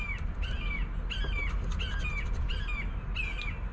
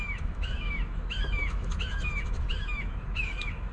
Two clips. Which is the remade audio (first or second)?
second